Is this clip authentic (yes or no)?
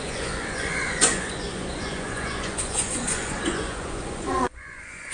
no